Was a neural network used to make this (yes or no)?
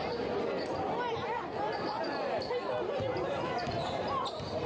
no